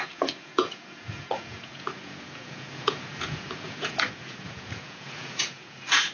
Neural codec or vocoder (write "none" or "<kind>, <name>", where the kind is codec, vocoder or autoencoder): vocoder, Vocos